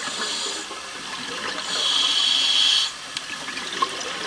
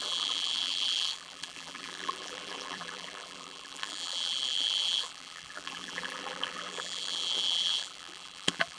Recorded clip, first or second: first